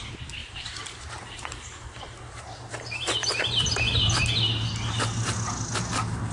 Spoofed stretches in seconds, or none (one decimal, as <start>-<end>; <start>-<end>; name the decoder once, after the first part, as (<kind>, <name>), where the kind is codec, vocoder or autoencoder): 0.4-4.2 (vocoder, BigVGAN v2)